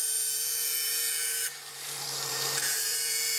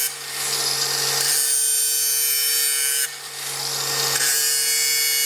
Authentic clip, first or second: second